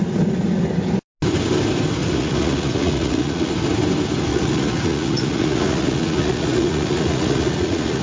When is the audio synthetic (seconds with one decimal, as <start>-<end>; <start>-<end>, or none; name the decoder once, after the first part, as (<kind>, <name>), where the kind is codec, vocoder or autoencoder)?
2.0-3.5 (vocoder, Vocos); 4.3-8.0